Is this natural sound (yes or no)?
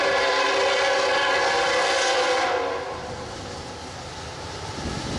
yes